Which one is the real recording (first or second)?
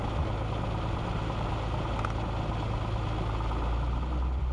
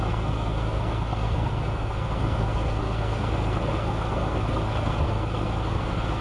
first